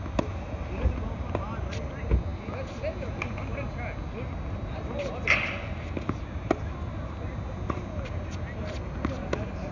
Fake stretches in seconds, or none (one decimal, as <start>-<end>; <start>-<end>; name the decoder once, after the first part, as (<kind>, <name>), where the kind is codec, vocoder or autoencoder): none